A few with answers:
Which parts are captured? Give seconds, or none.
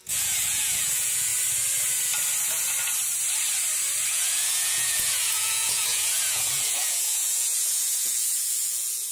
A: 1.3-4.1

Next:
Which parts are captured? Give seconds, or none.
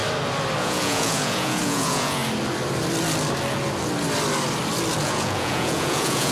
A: 0.0-0.6; 2.2-5.0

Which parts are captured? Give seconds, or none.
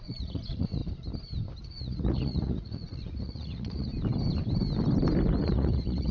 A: 0.8-1.6; 3.9-5.4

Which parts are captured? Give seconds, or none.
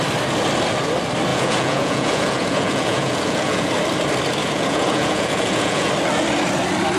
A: 0.0-1.3; 3.7-4.4; 5.9-7.0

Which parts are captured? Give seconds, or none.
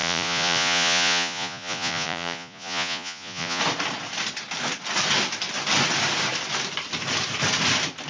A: 3.6-8.1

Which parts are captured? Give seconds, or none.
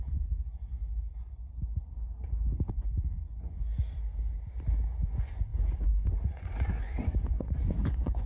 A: 0.8-2.7; 3.7-5.0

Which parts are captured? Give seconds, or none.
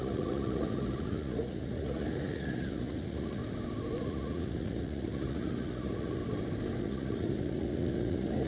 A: 3.4-4.0; 6.2-6.8